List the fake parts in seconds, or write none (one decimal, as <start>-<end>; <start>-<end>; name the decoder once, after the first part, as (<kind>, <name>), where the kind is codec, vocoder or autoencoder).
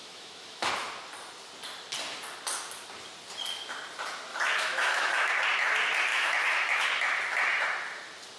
0.0-0.7 (autoencoder, DAC-VAE); 4.3-5.3; 6.1-6.9